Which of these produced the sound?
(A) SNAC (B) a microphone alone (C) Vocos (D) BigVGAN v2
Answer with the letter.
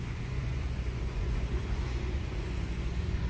C